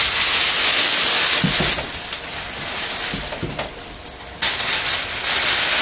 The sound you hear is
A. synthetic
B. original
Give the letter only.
B